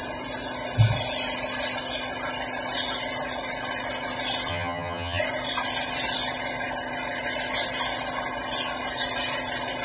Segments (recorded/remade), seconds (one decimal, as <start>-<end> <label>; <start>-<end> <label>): 0.0-4.5 recorded; 4.5-5.2 remade; 5.2-9.8 recorded